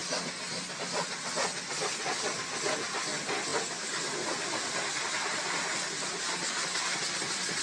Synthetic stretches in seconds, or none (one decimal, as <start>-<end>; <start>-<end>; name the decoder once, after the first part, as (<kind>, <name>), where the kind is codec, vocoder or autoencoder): none